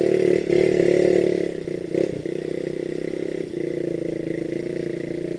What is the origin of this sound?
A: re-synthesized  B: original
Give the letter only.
B